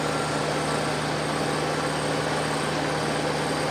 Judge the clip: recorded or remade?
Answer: recorded